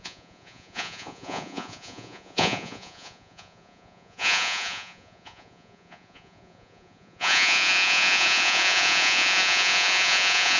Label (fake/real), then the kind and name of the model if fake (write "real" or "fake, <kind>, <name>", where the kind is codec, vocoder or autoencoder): fake, vocoder, Vocos